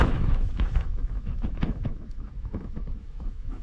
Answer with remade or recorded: remade